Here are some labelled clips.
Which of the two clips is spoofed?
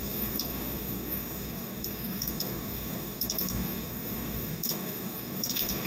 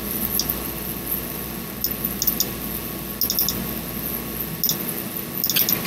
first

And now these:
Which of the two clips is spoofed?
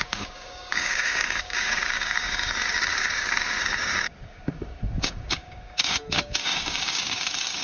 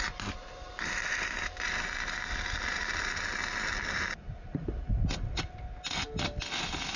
first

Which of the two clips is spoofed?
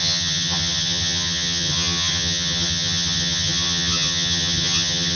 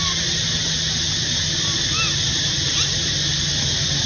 first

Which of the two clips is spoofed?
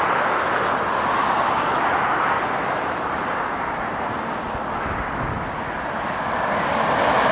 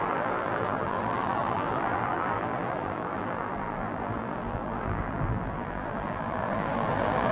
second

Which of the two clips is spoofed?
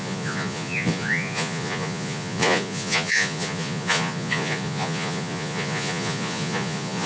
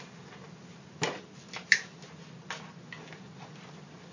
first